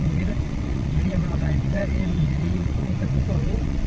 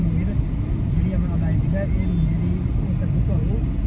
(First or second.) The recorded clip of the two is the second